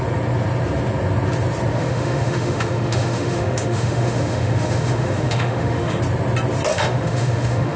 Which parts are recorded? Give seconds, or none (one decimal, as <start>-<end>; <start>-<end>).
0.0-1.7; 6.0-6.7